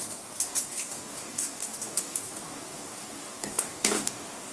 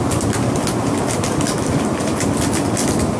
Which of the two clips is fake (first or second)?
first